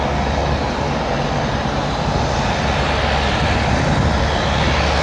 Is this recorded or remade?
recorded